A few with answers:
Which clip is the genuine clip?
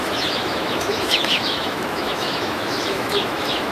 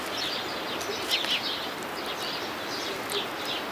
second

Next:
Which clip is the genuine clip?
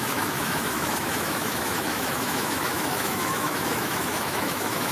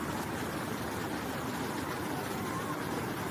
second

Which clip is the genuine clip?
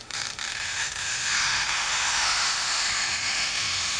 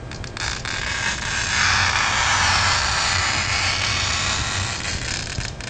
second